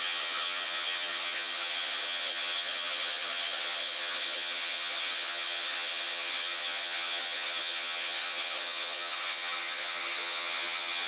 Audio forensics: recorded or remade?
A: remade